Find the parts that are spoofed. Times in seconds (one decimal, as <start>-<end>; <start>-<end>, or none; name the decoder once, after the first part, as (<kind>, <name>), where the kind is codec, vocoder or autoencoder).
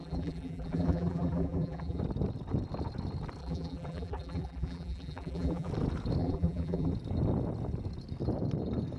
0.0-2.0 (vocoder, BigVGAN v2); 3.4-5.7; 6.2-6.9